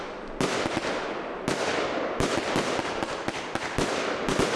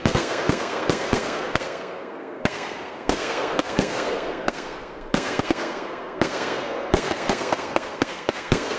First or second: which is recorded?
first